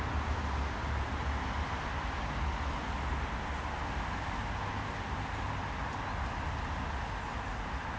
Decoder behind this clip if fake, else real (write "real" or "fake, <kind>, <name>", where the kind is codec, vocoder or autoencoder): real